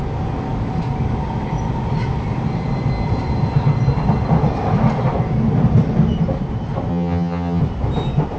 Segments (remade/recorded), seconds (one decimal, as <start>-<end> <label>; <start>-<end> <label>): 0.0-6.9 recorded; 6.9-7.6 remade; 7.6-8.4 recorded